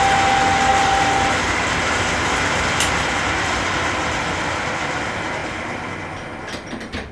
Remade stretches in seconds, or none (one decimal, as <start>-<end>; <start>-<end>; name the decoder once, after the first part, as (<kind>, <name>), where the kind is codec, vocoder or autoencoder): 0.7-5.0 (vocoder, BigVGAN v2); 5.4-5.9